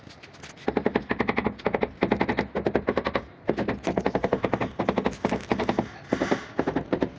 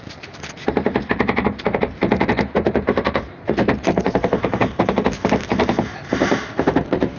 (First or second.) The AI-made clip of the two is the second